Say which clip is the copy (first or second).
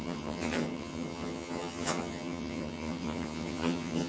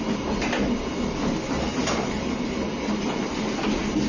first